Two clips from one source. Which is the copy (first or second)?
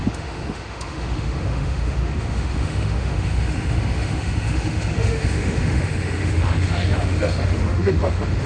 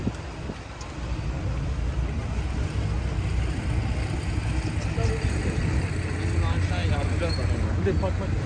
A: first